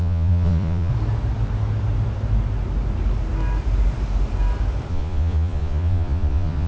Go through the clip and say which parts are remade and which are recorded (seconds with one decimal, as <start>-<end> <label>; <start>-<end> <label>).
0.0-0.9 remade; 0.9-4.9 recorded; 4.9-6.7 remade